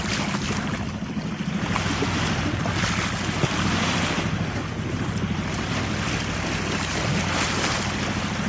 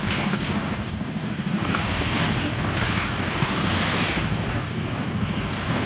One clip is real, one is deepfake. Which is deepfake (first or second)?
second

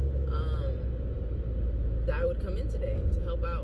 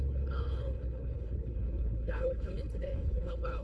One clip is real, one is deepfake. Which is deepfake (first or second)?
second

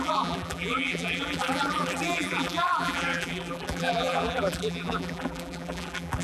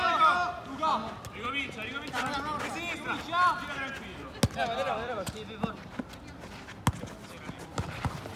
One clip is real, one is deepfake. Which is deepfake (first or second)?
first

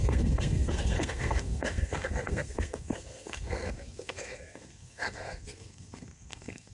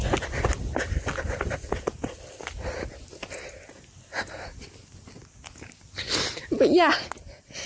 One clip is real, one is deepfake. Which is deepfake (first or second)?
first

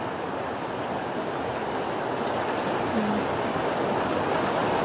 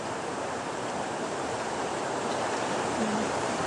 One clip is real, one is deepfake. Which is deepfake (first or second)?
second